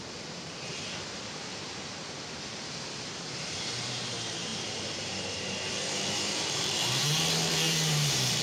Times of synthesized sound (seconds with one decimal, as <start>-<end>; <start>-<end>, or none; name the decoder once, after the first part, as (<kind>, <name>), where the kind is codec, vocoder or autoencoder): 0.0-7.0 (vocoder, BigVGAN v2); 7.5-8.4